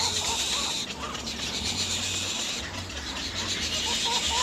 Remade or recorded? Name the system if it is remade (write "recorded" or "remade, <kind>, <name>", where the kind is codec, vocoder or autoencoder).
recorded